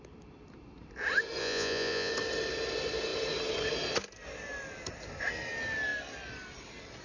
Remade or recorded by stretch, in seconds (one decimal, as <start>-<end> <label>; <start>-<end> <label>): 0.0-1.4 recorded; 1.4-2.1 remade; 2.1-7.0 recorded